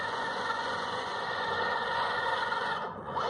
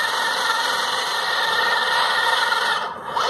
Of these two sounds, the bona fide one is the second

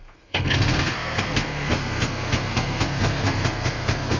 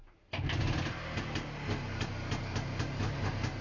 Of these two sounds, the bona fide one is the second